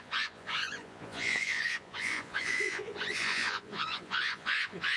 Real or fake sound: fake